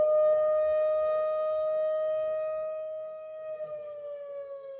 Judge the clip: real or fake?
fake